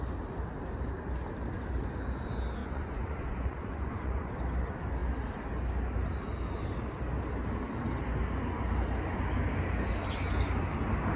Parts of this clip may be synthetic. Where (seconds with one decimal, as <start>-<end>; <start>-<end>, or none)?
2.6-4.3